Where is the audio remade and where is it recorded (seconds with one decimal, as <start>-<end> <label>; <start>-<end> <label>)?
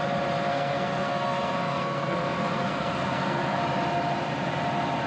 0.0-0.5 recorded; 0.5-3.6 remade; 3.6-5.1 recorded